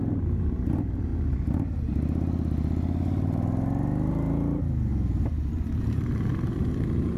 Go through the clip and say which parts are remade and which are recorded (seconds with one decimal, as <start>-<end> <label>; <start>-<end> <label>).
0.0-1.1 remade; 1.1-4.1 recorded; 4.1-4.9 remade; 4.9-5.8 recorded; 5.8-7.2 remade